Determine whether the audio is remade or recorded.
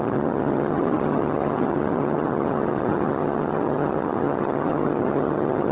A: remade